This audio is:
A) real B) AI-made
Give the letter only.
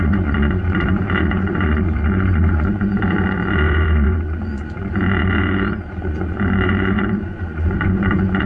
B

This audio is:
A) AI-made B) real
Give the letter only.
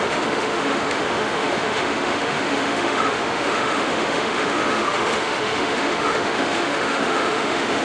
A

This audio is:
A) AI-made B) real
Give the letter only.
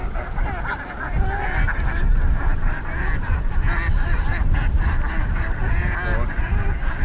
B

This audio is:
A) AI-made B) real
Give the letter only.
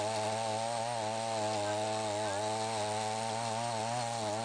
B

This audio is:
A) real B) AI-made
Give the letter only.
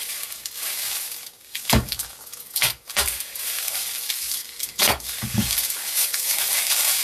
B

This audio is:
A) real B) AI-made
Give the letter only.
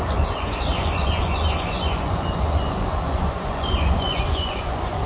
B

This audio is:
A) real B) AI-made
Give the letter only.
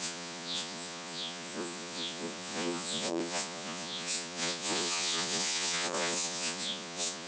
B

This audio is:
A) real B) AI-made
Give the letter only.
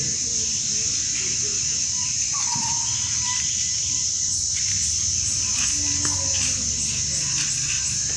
A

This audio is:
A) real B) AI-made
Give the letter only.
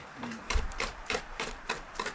B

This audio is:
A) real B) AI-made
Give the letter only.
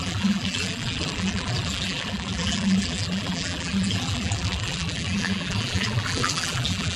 B